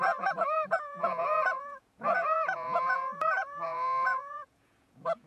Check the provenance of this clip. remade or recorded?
remade